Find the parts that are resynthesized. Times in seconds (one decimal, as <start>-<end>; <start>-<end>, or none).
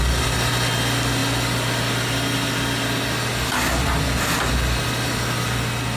none